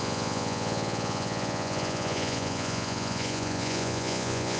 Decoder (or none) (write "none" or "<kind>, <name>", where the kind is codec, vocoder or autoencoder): vocoder, Vocos